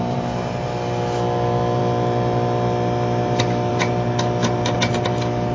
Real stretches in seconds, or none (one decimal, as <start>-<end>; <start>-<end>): 0.0-5.5